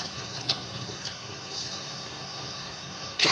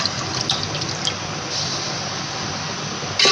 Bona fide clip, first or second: second